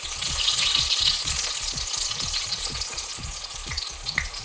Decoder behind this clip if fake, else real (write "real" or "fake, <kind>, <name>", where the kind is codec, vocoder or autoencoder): fake, vocoder, Vocos